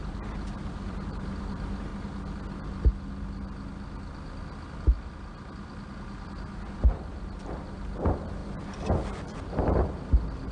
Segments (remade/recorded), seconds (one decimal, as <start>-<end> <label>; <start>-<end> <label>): 0.0-1.9 remade; 1.9-6.8 recorded; 6.8-10.5 remade